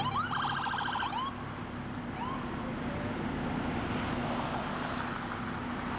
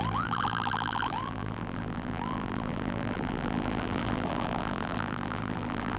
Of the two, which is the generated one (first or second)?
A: second